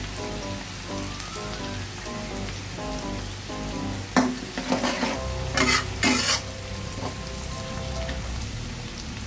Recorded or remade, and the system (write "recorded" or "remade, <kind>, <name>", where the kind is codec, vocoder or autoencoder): recorded